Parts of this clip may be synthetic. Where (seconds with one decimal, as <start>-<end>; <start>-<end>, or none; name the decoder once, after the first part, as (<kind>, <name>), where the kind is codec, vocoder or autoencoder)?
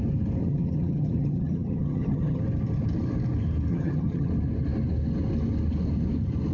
0.4-2.4 (vocoder, HiFi-GAN); 3.7-4.3